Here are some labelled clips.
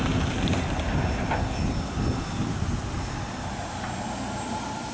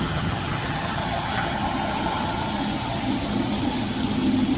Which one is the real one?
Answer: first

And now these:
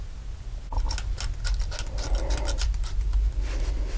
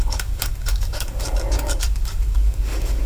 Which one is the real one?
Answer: first